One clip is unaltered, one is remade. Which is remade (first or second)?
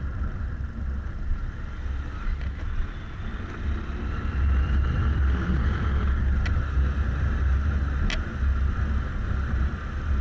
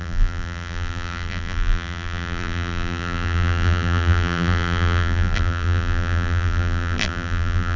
second